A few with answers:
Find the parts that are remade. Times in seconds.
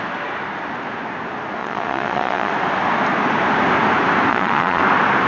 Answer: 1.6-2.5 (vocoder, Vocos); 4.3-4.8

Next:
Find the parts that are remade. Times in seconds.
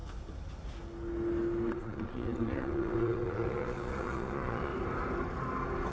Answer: 1.7-4.7 (vocoder, Vocos)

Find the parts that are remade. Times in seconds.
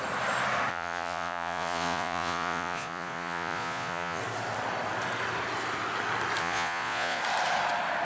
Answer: 0.7-4.2 (vocoder, Vocos); 6.4-7.2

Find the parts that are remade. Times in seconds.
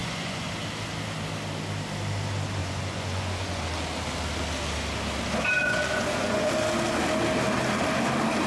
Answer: 0.0-0.5 (vocoder, Vocos); 2.6-3.6; 5.6-6.5